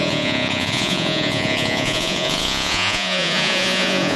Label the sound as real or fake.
fake